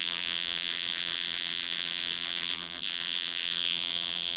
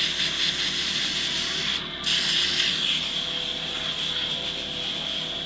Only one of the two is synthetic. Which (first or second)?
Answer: first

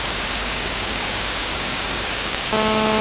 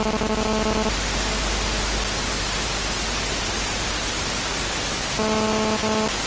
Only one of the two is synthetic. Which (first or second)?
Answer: first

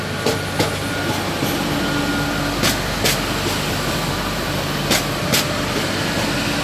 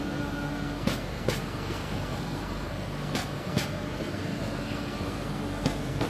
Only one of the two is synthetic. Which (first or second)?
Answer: second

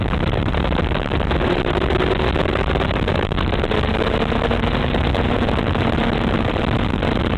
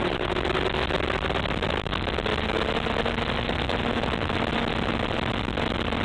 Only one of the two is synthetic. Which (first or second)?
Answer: first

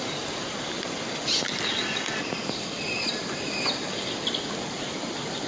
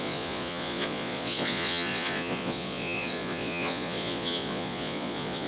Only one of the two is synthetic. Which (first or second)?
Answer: second